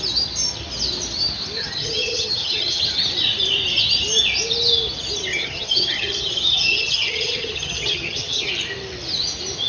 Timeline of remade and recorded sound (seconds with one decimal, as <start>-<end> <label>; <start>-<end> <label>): 0.0-1.6 recorded; 1.6-2.8 remade; 2.8-5.3 recorded; 5.3-8.5 remade; 8.5-9.7 recorded